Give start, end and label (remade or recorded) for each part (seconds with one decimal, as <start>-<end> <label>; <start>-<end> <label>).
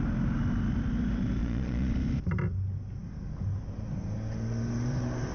0.0-1.4 recorded; 1.4-1.9 remade; 1.9-5.3 recorded